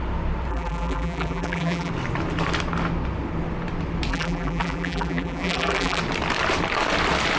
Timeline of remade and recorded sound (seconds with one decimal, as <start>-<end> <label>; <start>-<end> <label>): 0.0-0.5 recorded; 0.5-1.9 remade; 1.9-4.1 recorded; 4.1-6.0 remade; 6.0-7.4 recorded